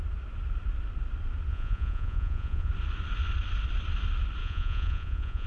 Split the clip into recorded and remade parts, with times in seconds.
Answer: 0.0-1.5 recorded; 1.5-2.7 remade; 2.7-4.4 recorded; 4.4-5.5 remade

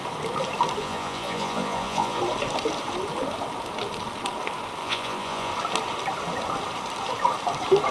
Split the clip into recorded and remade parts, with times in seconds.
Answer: 0.0-0.8 recorded; 0.8-2.2 remade; 2.2-4.8 recorded; 4.8-5.5 remade; 5.5-7.9 recorded

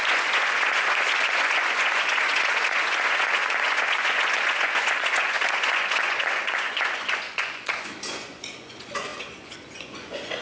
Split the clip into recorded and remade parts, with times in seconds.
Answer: 0.0-10.4 remade

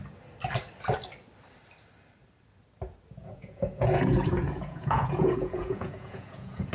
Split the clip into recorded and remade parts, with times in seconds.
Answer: 0.0-3.2 recorded; 3.2-6.7 remade

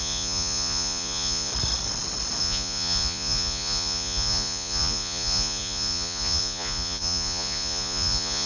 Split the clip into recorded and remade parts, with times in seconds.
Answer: 0.0-1.5 remade; 1.5-2.4 recorded; 2.4-8.5 remade